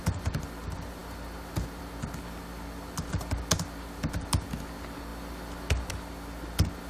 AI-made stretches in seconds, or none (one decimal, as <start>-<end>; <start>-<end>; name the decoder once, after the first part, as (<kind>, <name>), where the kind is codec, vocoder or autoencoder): none